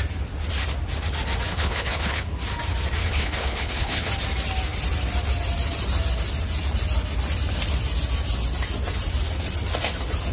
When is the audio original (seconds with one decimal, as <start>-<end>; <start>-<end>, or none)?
0.0-1.5; 2.2-3.0; 4.1-10.3